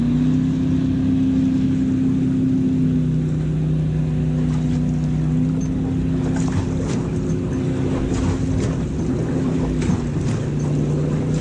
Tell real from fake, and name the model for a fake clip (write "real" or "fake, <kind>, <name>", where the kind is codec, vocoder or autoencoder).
real